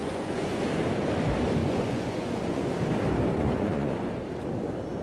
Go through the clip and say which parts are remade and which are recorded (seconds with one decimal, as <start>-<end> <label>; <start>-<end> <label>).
0.0-0.6 remade; 0.6-1.6 recorded; 1.6-2.7 remade; 2.7-3.3 recorded; 3.3-4.1 remade; 4.1-5.0 recorded